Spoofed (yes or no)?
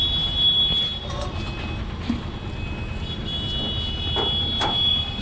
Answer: no